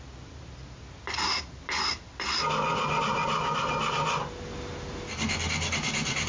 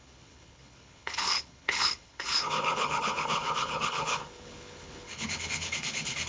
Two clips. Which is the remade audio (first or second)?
second